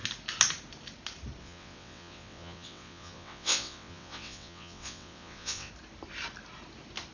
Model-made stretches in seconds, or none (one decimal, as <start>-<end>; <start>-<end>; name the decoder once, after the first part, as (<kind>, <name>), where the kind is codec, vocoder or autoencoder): 1.4-5.7 (vocoder, WaveNeXt)